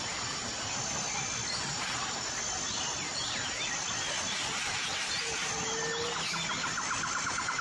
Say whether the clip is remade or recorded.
recorded